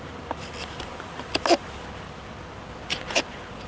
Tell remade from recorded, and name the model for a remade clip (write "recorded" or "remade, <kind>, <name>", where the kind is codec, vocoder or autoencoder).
recorded